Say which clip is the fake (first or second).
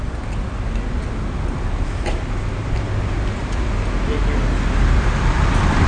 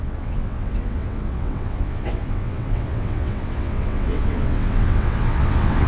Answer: second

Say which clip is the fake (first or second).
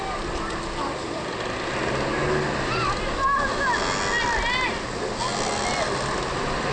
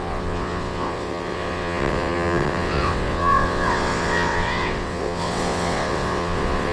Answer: second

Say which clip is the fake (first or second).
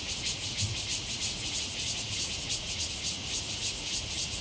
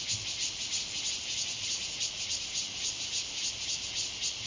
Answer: first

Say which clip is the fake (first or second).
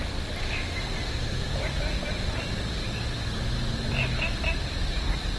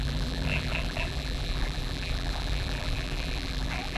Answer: second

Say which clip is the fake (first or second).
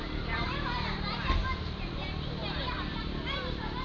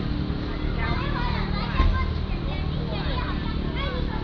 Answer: first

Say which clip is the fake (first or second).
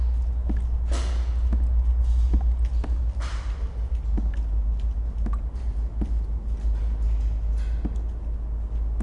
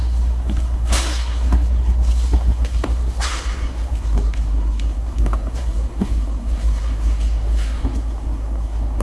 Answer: second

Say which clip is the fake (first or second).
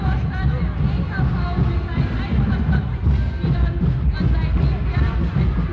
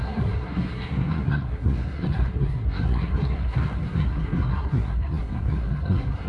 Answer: second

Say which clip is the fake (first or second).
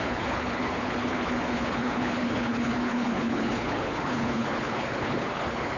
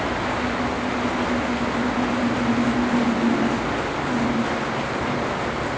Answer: first